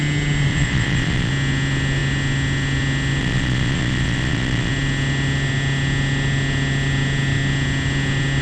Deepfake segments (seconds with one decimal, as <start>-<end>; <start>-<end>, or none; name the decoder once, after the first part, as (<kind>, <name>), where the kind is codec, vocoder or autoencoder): 0.5-1.3 (vocoder, Vocos); 3.2-4.7